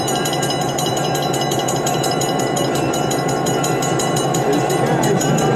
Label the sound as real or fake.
fake